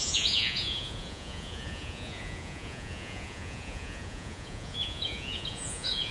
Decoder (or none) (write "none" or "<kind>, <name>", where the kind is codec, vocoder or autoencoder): vocoder, Vocos